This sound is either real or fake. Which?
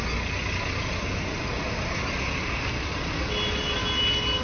real